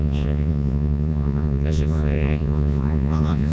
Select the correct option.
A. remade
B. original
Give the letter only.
A